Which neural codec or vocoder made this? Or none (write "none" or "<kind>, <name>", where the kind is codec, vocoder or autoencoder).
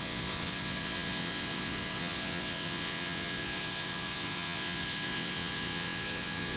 vocoder, WaveNeXt